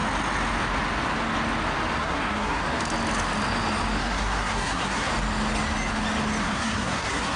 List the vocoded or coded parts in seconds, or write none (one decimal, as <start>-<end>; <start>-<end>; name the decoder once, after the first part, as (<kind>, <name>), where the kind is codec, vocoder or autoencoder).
2.0-2.6 (codec, SNAC); 4.0-5.1; 6.4-7.4